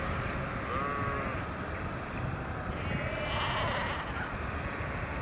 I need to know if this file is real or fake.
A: real